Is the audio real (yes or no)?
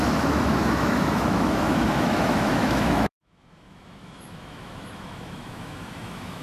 no